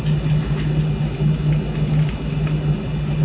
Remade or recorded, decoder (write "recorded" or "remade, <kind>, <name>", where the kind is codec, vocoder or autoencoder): recorded